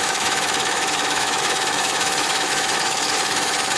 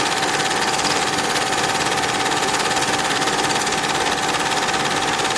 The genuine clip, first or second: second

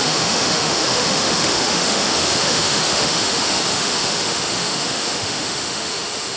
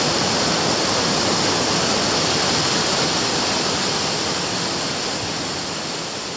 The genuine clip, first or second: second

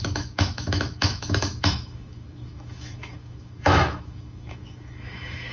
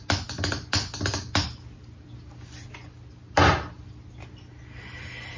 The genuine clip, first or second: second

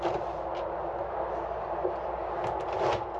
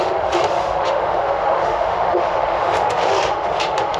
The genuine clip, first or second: first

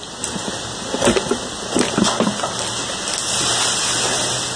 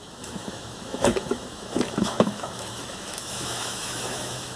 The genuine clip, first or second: first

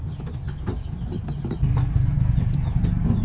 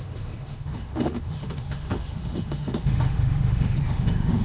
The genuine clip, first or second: first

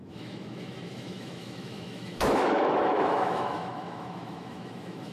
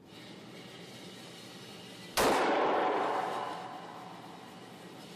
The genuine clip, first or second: second